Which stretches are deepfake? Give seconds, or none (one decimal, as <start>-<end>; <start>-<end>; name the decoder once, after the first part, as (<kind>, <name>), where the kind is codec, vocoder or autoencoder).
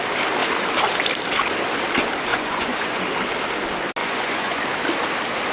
2.3-3.0 (vocoder, Vocos); 4.0-4.6